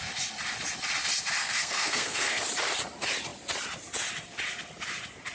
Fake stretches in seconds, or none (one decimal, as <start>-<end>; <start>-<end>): 1.4-2.4